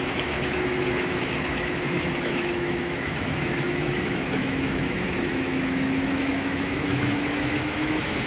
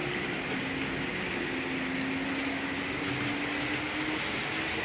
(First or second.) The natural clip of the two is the second